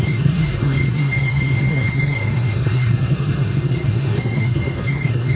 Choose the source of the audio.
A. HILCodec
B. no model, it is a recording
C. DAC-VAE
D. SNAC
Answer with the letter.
D